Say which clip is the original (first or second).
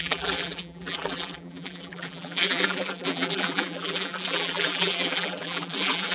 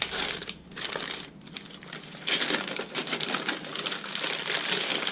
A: second